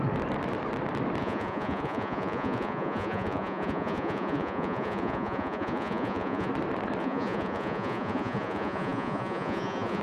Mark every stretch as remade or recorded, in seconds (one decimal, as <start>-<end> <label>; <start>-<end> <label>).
0.0-1.2 recorded; 1.2-6.5 remade; 6.5-7.0 recorded; 7.0-10.0 remade

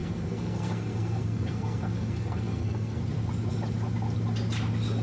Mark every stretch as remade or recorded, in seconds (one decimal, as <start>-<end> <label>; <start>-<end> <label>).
0.0-3.0 remade; 3.0-5.0 recorded